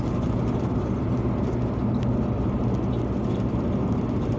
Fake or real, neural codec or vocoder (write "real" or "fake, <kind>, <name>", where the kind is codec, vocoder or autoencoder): real